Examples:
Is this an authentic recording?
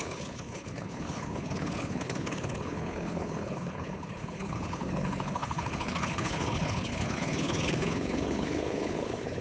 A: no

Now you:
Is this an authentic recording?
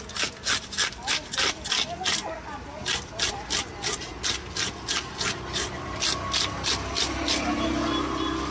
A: yes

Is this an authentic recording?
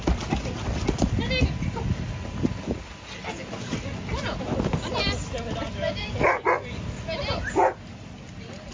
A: yes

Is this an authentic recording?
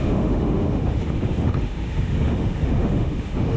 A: no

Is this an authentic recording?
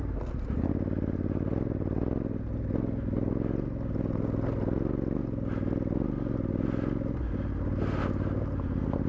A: yes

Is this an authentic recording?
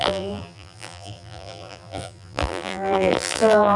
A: no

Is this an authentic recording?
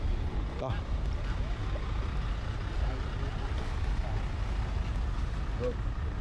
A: yes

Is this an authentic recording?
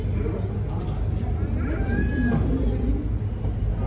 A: yes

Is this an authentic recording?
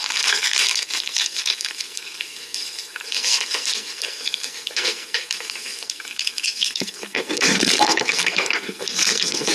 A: no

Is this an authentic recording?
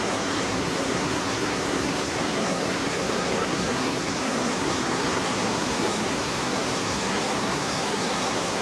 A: no